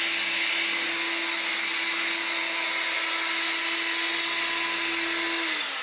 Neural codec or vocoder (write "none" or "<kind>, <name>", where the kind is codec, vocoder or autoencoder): none